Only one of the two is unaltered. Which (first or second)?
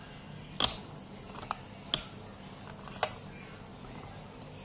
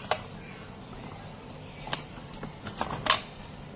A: first